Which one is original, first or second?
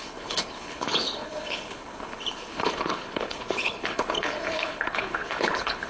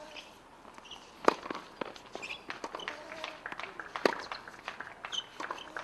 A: second